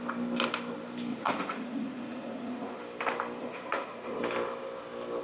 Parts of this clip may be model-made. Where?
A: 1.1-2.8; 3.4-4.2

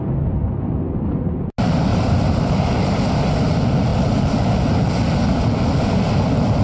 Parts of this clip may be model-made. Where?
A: 1.9-2.6

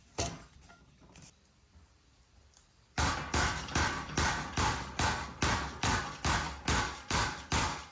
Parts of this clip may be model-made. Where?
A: 0.0-7.9

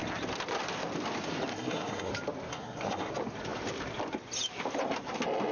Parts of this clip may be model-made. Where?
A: 1.5-2.1; 2.5-3.1

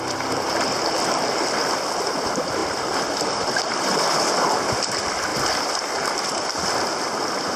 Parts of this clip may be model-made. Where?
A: 2.6-4.4; 5.3-6.5

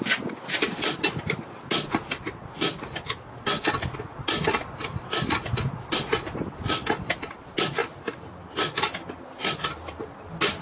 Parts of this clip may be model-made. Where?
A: none

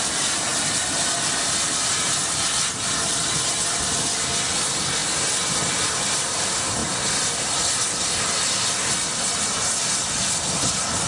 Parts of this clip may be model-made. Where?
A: none

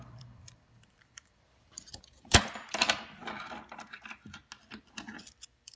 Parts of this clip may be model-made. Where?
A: 0.0-3.2; 4.6-5.8